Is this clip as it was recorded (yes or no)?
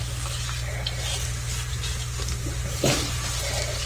yes